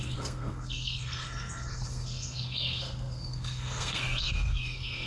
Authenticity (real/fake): fake